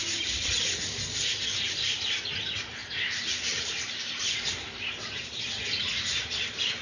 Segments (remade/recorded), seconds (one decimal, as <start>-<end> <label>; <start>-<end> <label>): 0.0-0.5 remade; 0.5-2.8 recorded; 2.8-5.6 remade; 5.6-6.8 recorded